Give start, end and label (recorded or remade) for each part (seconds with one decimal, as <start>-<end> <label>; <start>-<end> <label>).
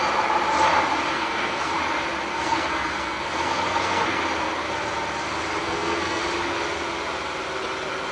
0.0-1.1 recorded; 1.1-1.8 remade; 1.8-2.3 recorded; 2.3-4.2 remade; 4.2-5.6 recorded; 5.6-6.2 remade; 6.2-8.1 recorded